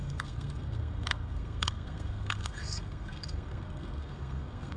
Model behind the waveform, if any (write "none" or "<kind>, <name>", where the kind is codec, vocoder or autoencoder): codec, SNAC